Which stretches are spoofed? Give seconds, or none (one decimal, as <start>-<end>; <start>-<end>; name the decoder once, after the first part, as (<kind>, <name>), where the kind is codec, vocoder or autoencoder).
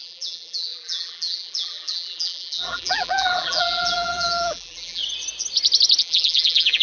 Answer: 0.0-5.0 (vocoder, BigVGAN v2); 6.0-6.8